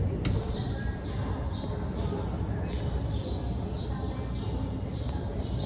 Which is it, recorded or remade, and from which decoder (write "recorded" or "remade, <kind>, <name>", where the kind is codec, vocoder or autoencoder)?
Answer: recorded